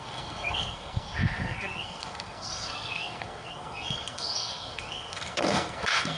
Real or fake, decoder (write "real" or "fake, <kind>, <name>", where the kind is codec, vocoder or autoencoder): fake, codec, SNAC